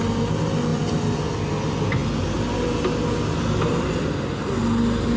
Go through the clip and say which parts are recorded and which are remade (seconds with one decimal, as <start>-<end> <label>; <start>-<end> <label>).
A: 0.0-5.2 recorded